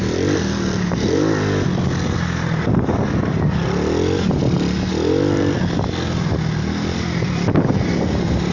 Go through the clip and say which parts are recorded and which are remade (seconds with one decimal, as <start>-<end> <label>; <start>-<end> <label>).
0.0-8.5 recorded